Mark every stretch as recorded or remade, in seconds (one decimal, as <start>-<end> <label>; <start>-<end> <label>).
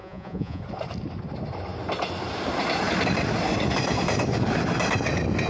0.0-0.6 remade; 0.6-5.5 recorded